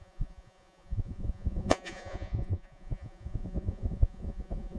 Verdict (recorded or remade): remade